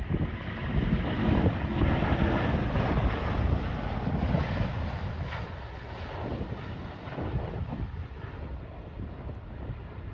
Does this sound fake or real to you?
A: real